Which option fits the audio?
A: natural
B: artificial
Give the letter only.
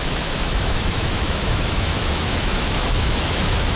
B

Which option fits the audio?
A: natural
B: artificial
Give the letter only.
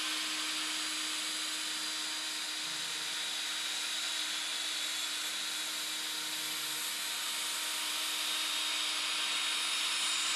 A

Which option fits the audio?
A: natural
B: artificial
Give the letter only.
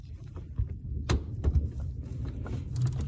A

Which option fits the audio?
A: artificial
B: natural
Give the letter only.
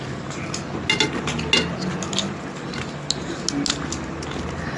B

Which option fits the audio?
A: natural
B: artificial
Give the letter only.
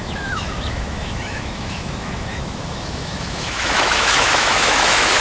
B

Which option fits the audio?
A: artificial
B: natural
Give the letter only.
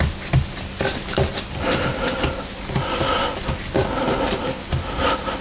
B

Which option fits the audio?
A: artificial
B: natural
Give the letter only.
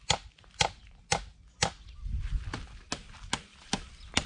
B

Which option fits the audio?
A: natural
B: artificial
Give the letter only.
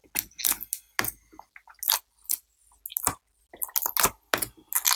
A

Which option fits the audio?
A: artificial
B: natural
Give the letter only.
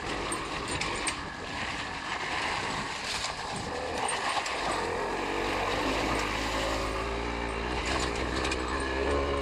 B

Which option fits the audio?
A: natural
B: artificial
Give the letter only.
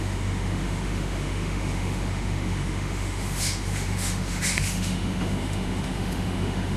B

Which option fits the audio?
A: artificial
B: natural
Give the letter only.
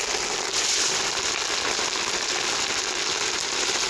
B